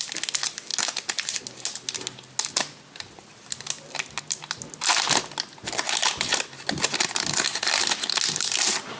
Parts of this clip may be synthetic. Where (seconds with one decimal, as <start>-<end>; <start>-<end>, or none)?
none